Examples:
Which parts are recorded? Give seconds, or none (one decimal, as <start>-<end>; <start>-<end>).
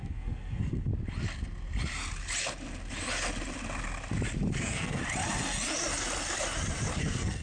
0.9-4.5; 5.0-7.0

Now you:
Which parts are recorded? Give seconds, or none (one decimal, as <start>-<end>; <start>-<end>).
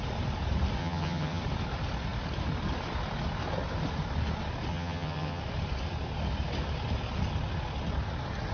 0.0-0.8; 1.4-4.7; 5.4-8.5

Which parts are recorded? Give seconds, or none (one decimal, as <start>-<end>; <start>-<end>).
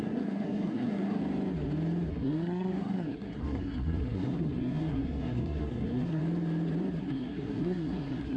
1.2-2.1; 6.2-7.0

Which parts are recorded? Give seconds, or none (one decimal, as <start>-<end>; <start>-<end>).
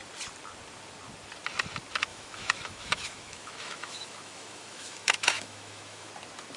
0.0-2.1; 6.1-6.6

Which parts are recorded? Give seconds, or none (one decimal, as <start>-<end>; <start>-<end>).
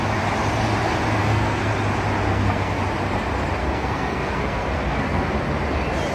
0.0-1.2; 1.7-2.3; 2.8-3.6; 5.3-6.1